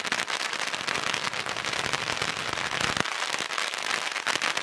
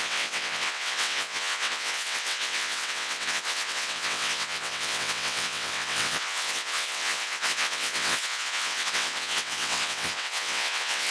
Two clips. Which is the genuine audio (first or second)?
first